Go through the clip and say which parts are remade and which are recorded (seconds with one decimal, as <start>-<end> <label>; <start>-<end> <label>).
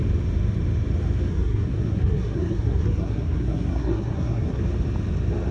0.0-1.3 recorded; 1.3-4.6 remade; 4.6-5.5 recorded